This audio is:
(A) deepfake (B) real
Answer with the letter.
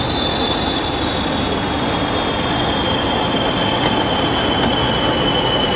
B